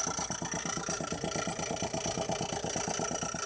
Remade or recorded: recorded